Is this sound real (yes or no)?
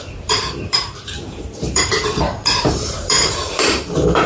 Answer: no